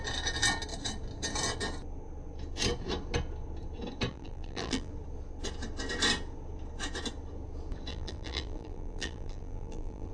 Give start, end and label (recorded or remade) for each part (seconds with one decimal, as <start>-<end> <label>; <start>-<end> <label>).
0.0-4.1 recorded; 4.1-4.9 remade; 4.9-7.9 recorded; 7.9-10.1 remade